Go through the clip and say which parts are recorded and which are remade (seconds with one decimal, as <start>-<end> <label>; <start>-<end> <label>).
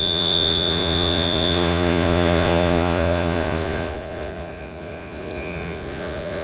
0.0-6.4 remade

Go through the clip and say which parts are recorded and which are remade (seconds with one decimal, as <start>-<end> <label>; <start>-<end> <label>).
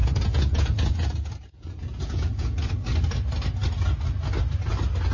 0.0-2.7 remade; 2.7-5.1 recorded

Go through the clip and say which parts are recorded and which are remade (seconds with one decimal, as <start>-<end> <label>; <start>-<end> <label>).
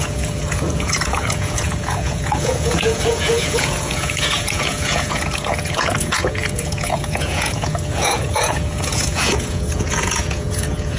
0.0-11.0 remade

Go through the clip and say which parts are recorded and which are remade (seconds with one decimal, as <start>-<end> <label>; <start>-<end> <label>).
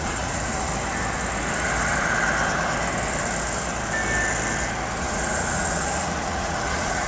0.0-0.7 remade; 0.7-5.0 recorded; 5.0-7.1 remade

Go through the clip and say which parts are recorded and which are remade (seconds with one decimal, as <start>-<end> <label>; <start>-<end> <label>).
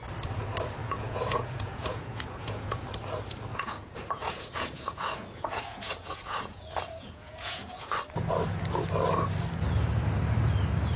0.0-0.8 recorded; 0.8-2.8 remade; 2.8-3.5 recorded; 3.5-7.9 remade; 7.9-11.0 recorded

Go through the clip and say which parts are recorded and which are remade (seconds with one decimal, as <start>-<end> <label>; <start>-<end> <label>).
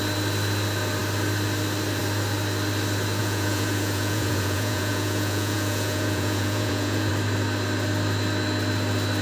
0.0-3.2 recorded; 3.2-7.1 remade; 7.1-9.2 recorded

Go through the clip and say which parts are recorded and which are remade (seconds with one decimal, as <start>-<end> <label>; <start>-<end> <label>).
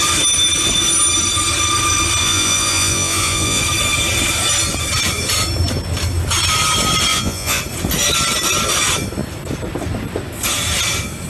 0.0-2.2 recorded; 2.2-3.6 remade; 3.6-7.1 recorded; 7.1-7.6 remade; 7.6-11.3 recorded